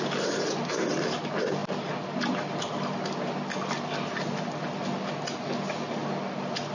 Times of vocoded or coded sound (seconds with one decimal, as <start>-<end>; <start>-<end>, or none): none